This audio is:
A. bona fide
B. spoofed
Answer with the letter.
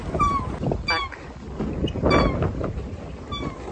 A